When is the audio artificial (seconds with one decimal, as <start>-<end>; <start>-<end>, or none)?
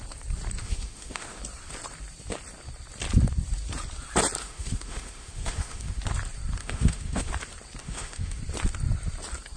0.6-1.4; 4.4-6.0; 6.6-7.3; 7.8-8.4